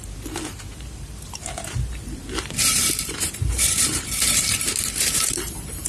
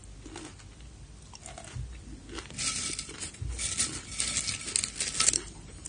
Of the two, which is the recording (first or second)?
second